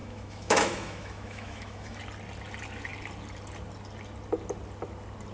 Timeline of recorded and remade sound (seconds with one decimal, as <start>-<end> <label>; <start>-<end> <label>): 0.0-2.0 remade; 2.0-5.3 recorded